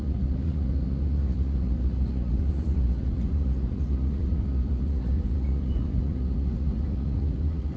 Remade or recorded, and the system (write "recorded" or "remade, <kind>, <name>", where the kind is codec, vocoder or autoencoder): remade, vocoder, Vocos